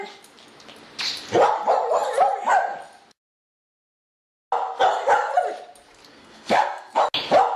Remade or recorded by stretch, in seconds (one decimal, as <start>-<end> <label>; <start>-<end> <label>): 0.0-6.1 recorded; 6.1-7.0 remade; 7.0-7.6 recorded